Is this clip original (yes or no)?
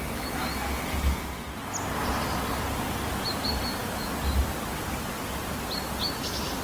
yes